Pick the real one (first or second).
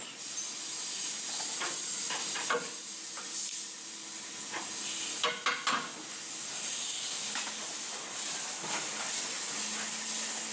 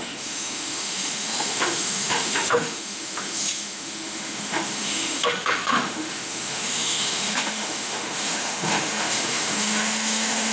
first